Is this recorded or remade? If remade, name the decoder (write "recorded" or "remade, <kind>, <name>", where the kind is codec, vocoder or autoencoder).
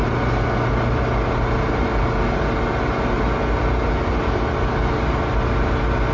recorded